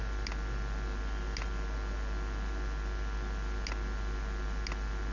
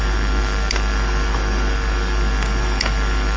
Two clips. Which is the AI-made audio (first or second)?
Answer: second